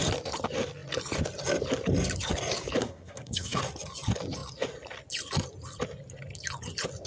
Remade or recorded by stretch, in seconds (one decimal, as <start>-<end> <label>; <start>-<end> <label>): 0.0-2.8 recorded; 2.8-3.6 remade; 3.6-7.1 recorded

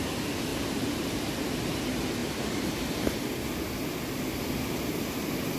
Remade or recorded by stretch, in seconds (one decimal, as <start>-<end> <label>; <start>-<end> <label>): 0.0-0.5 recorded; 0.5-1.5 remade; 1.5-2.2 recorded; 2.2-2.9 remade; 2.9-5.6 recorded

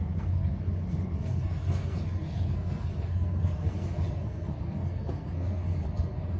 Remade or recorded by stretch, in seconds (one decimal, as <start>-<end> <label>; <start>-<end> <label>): 0.0-6.4 remade

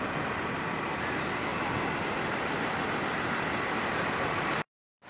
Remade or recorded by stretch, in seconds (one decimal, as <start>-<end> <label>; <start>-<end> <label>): 0.0-5.1 recorded

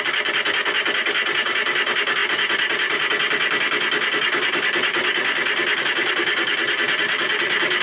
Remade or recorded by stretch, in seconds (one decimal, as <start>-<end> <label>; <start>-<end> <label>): 0.0-7.8 recorded